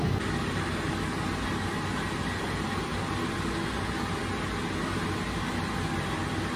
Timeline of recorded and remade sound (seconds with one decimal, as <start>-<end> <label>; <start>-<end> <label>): 0.0-6.6 recorded